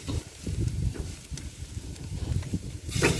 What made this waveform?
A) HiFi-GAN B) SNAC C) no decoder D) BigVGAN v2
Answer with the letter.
D